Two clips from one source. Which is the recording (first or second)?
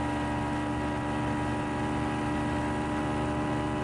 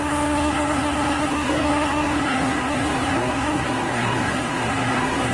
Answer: first